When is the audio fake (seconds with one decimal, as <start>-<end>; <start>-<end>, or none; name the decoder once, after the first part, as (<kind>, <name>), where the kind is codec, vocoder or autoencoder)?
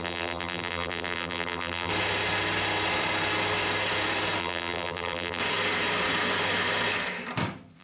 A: 0.0-1.9 (vocoder, BigVGAN v2); 4.4-5.4